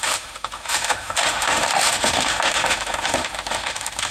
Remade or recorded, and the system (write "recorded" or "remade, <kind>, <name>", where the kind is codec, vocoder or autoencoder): remade, autoencoder, DAC-VAE